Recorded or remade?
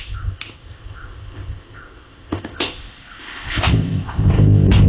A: remade